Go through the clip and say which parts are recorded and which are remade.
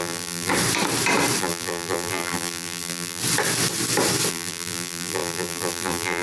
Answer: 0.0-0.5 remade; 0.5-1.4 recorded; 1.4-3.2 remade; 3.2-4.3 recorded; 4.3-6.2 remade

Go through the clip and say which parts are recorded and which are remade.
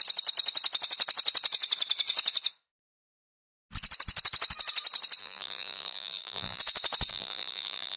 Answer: 0.0-5.2 recorded; 5.2-6.6 remade; 6.6-7.1 recorded; 7.1-8.0 remade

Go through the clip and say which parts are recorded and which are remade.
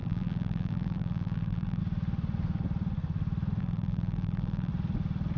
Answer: 0.0-1.8 remade; 1.8-3.6 recorded; 3.6-4.7 remade; 4.7-5.4 recorded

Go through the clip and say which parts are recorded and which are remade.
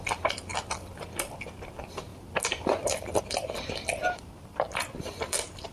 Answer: 0.0-2.1 recorded; 2.1-3.2 remade; 3.2-4.0 recorded; 4.0-4.8 remade; 4.8-5.7 recorded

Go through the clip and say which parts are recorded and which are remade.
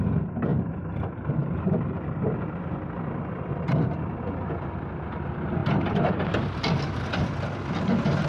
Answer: 0.0-8.3 recorded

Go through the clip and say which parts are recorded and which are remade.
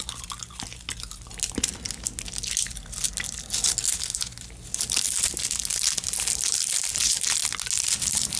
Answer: 0.0-8.4 recorded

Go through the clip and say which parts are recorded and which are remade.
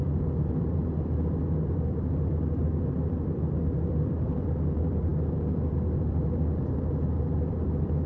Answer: 0.0-8.1 remade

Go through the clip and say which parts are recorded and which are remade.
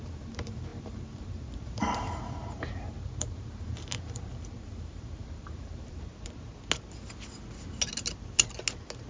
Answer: 0.0-6.1 remade; 6.1-9.1 recorded